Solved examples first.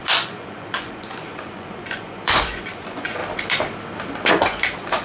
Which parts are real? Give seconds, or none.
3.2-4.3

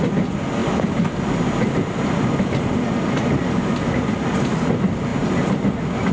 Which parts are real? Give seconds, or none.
0.0-6.1

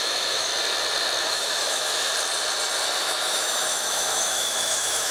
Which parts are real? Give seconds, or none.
0.5-1.2; 2.1-3.0

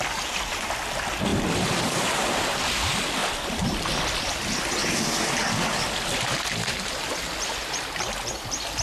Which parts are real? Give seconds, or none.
0.0-1.3; 2.4-3.2; 4.6-8.8

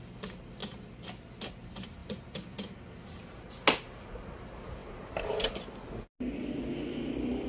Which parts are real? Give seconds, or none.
0.0-4.8; 5.5-7.5

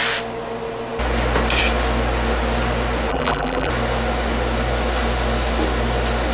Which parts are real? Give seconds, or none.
0.0-3.1; 3.7-6.3